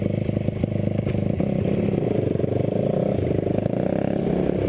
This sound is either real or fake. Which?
real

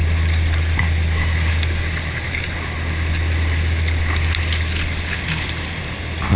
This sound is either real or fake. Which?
real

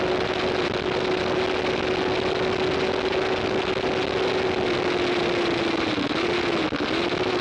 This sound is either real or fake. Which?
real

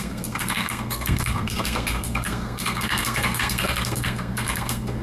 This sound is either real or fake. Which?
fake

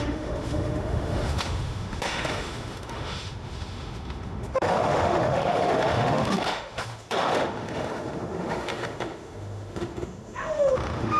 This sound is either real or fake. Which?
fake